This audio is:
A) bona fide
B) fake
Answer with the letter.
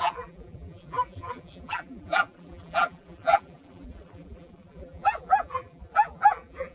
B